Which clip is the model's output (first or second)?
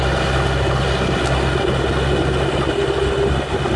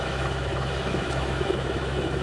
second